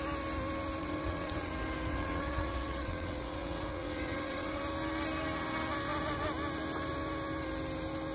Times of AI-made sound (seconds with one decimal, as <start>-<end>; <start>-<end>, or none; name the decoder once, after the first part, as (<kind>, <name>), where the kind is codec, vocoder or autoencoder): 0.8-1.5 (vocoder, WaveNeXt); 1.9-4.6